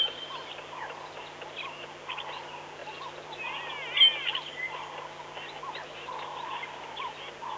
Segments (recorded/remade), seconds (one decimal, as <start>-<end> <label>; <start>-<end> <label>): 0.0-7.6 recorded